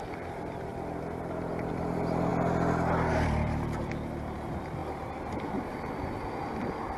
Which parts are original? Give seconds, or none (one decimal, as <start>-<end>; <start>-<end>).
2.3-3.1